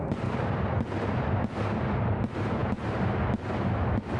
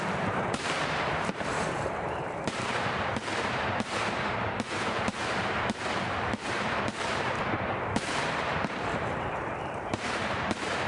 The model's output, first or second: second